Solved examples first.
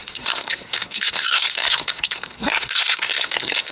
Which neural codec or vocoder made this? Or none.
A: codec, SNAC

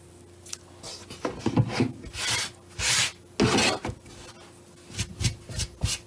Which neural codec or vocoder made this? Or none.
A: none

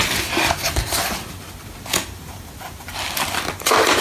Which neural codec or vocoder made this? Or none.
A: none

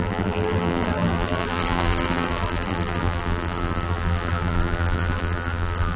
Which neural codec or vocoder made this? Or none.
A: vocoder, BigVGAN v2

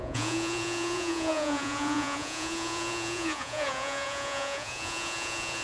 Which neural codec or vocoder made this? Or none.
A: vocoder, Vocos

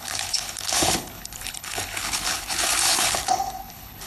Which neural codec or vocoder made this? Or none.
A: codec, HILCodec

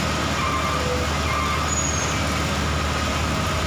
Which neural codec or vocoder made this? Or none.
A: none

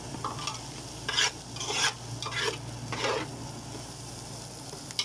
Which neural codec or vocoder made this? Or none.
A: none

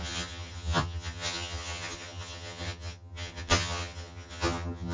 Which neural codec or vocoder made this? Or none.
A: vocoder, HiFi-GAN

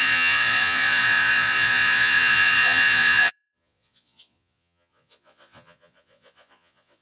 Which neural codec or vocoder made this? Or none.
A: vocoder, Vocos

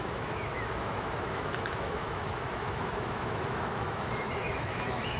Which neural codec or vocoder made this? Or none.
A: autoencoder, DAC-VAE